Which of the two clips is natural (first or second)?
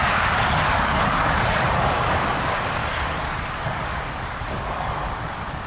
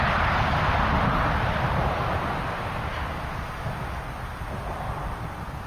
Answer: second